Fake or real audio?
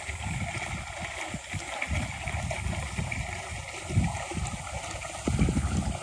real